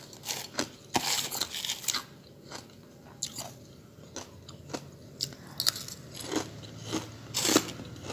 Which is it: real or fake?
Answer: real